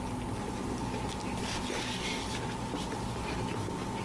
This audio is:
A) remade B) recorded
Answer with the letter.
B